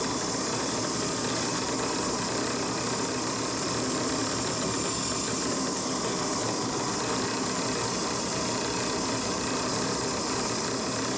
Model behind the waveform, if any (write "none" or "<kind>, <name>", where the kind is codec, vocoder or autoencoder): none